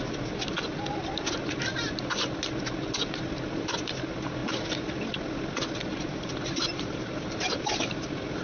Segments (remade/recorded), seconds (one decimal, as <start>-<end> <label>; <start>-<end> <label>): 0.0-5.9 recorded; 5.9-7.9 remade; 7.9-8.4 recorded